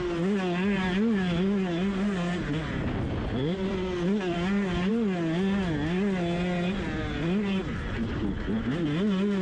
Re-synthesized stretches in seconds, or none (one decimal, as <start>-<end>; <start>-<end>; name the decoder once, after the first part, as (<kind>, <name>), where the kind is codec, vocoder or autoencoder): none